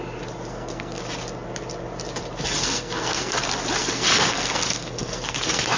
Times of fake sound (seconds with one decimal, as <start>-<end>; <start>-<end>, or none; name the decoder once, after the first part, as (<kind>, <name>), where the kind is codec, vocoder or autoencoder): 0.5-1.0 (codec, SNAC); 2.6-3.4; 3.8-5.8